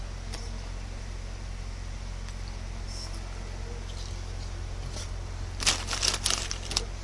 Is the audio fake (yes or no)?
no